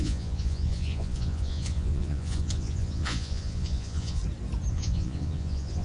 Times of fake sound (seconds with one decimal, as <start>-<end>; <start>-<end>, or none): 0.0-4.2; 4.7-5.8